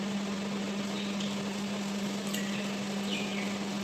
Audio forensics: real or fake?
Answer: real